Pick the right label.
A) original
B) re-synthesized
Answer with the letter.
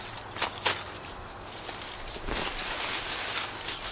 A